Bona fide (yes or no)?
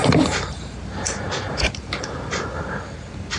no